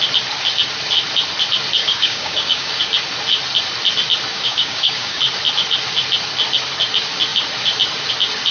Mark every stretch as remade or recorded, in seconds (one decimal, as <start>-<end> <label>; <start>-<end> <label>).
0.0-1.8 recorded; 1.8-2.8 remade; 2.8-4.3 recorded; 4.3-5.2 remade; 5.2-8.5 recorded